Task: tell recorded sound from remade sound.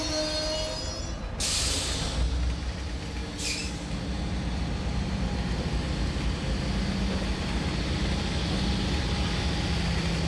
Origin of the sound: recorded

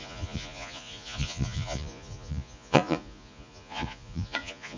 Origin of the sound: remade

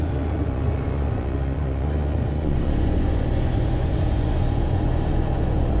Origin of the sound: remade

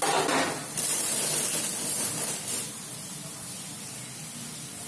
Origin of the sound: recorded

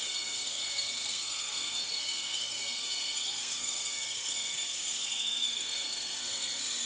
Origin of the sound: remade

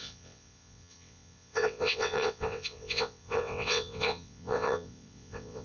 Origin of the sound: remade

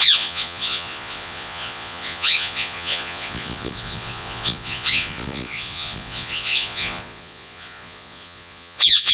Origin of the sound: remade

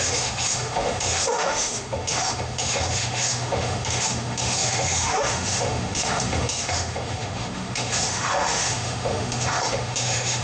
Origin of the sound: remade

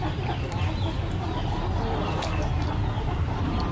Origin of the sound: recorded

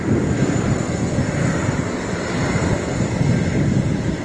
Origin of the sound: recorded